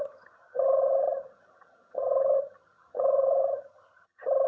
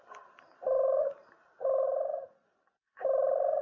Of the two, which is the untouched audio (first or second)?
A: second